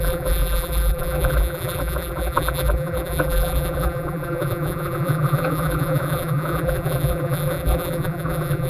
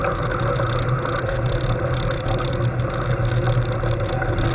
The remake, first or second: first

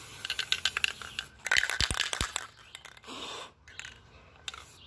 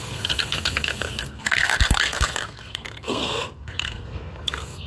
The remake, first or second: second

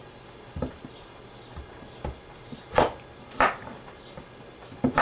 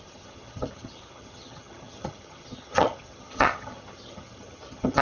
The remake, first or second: second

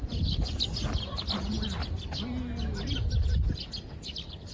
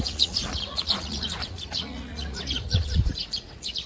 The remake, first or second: second